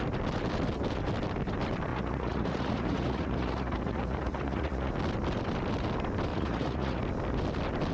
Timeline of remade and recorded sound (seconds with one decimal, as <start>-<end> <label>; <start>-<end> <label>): 0.0-1.9 recorded; 1.9-4.9 remade; 4.9-6.3 recorded; 6.3-7.0 remade; 7.0-7.9 recorded

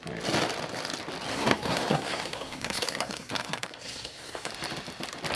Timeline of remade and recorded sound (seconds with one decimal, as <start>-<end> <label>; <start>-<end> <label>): 0.0-1.3 recorded; 1.3-4.5 remade; 4.5-5.4 recorded